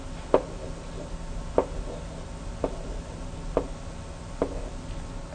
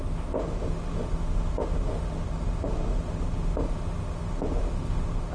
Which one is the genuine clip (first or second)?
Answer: first